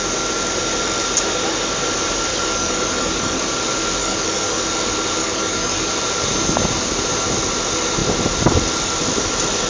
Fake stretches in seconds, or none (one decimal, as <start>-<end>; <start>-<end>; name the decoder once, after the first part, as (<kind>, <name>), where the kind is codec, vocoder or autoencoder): 2.3-3.4 (codec, DAC); 4.0-4.6; 5.2-5.9